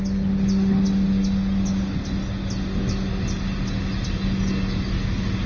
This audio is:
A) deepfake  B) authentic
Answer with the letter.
B